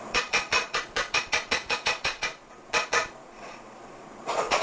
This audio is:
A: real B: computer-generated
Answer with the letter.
B